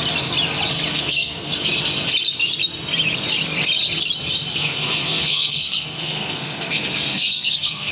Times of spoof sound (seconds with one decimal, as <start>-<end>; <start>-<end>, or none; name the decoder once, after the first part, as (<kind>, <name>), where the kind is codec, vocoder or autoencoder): 0.9-1.5 (codec, SNAC); 4.5-7.9